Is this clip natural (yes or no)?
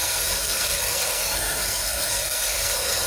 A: no